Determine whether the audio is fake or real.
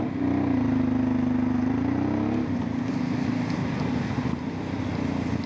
real